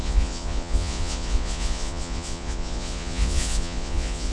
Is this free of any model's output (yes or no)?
no